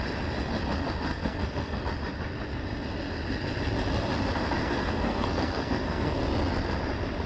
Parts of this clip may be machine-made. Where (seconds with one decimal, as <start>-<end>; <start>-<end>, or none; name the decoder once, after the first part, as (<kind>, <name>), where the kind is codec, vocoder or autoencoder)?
1.1-1.8 (codec, SNAC); 4.6-6.2